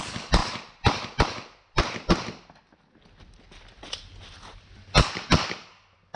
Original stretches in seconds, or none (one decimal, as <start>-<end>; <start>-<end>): 0.0-6.2

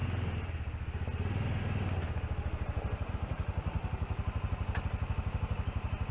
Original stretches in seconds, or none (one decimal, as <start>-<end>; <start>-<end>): 0.0-6.1